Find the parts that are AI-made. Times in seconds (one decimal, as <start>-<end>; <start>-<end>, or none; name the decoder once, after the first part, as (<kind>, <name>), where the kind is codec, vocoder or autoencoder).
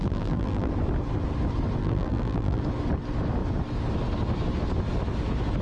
0.0-0.7 (vocoder, BigVGAN v2); 1.8-2.6